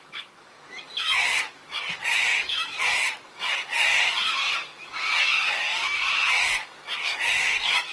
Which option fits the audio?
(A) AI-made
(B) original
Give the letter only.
A